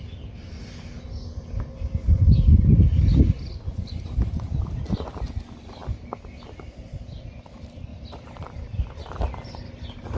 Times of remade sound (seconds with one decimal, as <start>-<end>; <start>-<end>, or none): none